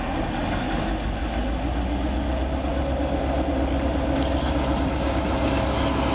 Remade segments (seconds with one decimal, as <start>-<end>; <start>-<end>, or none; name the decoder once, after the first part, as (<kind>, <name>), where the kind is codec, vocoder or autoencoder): none